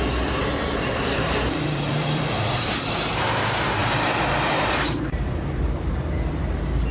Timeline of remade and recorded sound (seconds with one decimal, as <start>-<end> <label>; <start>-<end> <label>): 0.0-6.9 remade

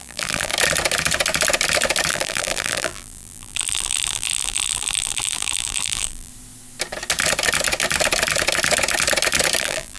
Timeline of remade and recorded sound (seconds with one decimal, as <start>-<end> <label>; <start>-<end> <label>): 0.0-0.5 remade; 0.5-2.1 recorded; 2.1-6.3 remade; 6.3-9.6 recorded; 9.6-10.0 remade

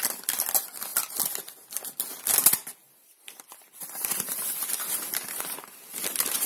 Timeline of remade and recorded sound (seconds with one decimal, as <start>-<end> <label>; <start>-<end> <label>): 0.0-2.8 recorded; 2.8-6.5 remade